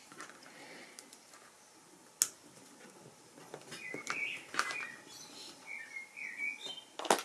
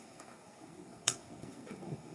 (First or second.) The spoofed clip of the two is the second